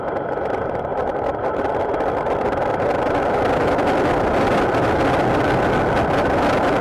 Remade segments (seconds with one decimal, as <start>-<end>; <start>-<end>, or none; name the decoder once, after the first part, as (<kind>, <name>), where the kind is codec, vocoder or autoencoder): none